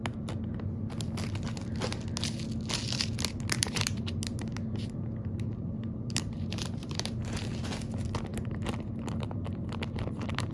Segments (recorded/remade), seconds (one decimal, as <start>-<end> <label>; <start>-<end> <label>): 0.0-3.6 recorded; 3.6-7.4 remade; 7.4-8.3 recorded; 8.3-10.5 remade